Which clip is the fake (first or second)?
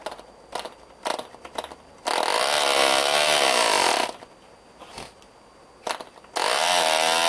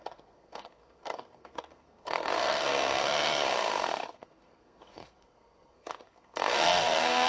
second